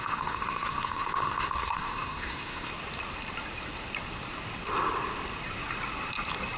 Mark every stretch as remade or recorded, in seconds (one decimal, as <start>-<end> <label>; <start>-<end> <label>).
0.0-2.7 remade; 2.7-6.6 recorded